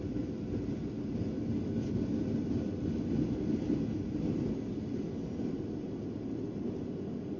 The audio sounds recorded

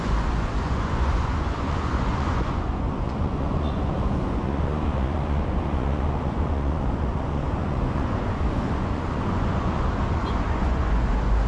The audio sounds remade